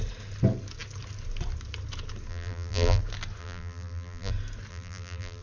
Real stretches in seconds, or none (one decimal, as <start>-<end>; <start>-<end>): 0.0-2.3; 3.0-3.4; 4.3-4.7